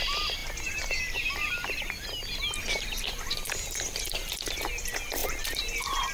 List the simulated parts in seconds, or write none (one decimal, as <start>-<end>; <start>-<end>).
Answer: none